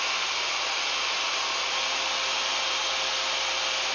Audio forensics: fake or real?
real